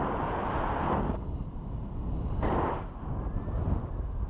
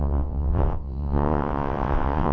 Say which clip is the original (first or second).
first